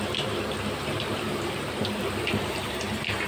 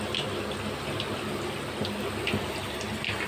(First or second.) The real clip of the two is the second